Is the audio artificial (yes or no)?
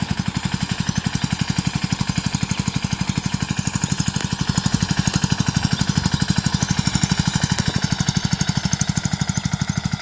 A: no